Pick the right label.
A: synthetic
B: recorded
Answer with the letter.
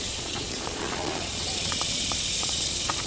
A